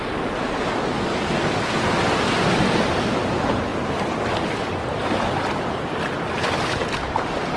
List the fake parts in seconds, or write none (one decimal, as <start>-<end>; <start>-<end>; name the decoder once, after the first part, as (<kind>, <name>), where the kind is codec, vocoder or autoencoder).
none